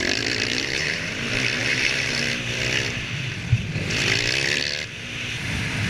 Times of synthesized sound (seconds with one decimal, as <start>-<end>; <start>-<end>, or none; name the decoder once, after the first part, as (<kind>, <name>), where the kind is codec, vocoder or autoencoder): 0.5-1.2 (vocoder, BigVGAN v2); 1.6-2.2